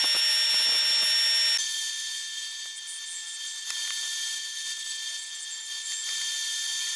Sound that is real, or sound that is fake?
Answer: real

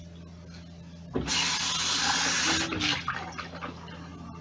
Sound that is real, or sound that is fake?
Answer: real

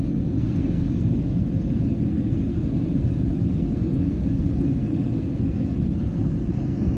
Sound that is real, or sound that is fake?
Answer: fake